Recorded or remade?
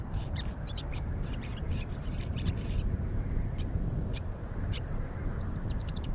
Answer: remade